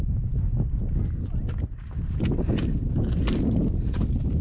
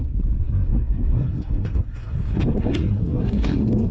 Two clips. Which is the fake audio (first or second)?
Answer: second